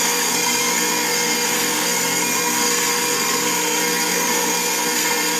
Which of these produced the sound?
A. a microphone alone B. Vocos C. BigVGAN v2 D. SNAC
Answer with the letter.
D